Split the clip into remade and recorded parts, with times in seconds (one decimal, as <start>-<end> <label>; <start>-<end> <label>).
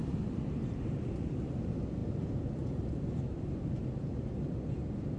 0.0-5.2 recorded